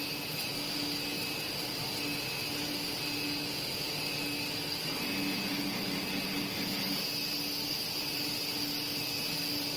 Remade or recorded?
recorded